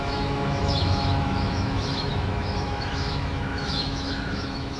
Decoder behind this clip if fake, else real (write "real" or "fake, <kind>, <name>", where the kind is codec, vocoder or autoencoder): fake, autoencoder, DAC-VAE